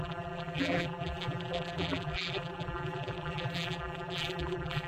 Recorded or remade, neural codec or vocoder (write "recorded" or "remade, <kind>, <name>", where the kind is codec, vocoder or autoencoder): remade, vocoder, BigVGAN v2